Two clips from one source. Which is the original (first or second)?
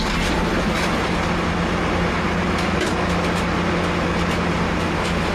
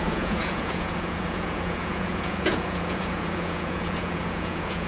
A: first